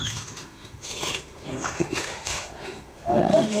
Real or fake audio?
fake